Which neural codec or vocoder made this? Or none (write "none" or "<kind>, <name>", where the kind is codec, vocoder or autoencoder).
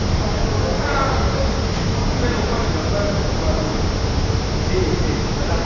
none